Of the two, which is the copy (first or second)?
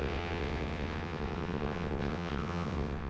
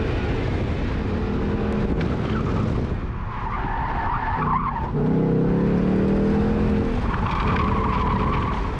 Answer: first